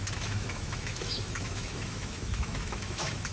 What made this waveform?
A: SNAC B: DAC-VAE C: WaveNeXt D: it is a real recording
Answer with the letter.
B